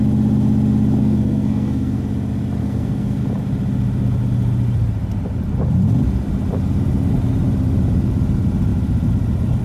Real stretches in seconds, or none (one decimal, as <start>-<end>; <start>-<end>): 0.0-1.0; 2.0-2.6; 3.2-9.6